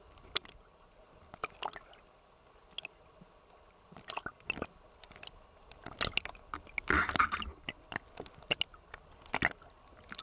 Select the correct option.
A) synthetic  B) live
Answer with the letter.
B